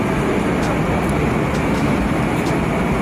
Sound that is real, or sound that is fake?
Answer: real